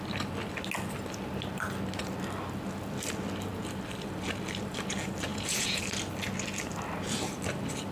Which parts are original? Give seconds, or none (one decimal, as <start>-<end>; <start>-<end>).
0.0-5.3; 5.8-7.9